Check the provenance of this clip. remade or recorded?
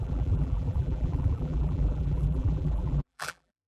remade